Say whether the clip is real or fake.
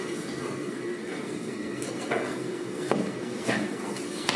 fake